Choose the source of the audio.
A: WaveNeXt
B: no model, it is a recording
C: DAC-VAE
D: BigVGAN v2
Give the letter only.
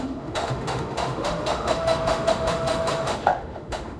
C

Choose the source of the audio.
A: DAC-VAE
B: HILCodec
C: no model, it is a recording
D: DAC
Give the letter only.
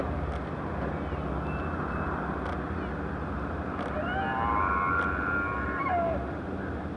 C